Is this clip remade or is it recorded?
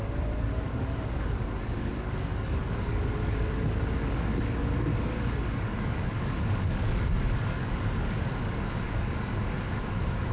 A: remade